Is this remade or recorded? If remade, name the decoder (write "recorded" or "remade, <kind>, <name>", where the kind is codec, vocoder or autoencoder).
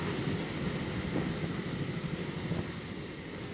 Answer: recorded